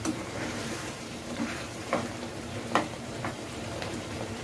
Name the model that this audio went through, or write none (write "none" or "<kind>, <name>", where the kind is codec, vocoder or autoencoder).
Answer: vocoder, BigVGAN v2